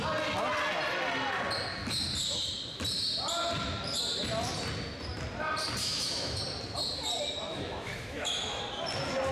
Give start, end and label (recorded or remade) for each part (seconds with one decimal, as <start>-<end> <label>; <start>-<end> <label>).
0.0-5.8 recorded; 5.8-6.4 remade; 6.4-7.4 recorded; 7.4-8.6 remade; 8.6-9.3 recorded